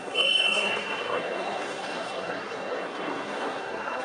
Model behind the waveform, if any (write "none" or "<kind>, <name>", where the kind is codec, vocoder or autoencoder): codec, SNAC